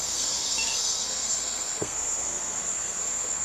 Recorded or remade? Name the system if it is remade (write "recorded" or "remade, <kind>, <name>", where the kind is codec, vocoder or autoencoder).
remade, codec, SNAC